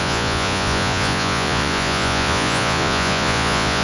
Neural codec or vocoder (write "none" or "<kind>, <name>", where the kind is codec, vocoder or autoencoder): vocoder, Vocos